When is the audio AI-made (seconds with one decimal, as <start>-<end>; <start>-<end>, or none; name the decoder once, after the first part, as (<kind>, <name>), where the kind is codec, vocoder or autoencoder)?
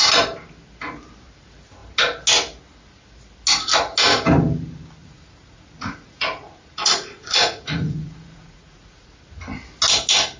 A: 5.0-9.2 (vocoder, Vocos)